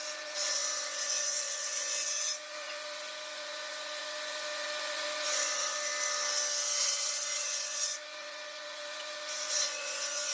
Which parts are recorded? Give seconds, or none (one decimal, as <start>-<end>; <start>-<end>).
5.9-6.8